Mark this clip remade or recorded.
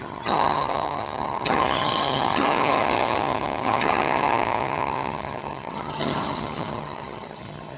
remade